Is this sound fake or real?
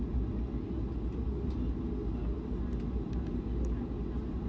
real